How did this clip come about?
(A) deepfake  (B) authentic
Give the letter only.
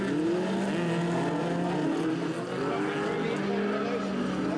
B